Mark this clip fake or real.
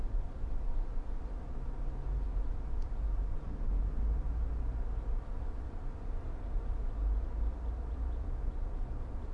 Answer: real